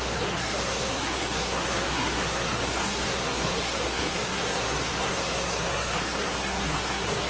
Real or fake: fake